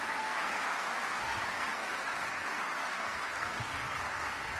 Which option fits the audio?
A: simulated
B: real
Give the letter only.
A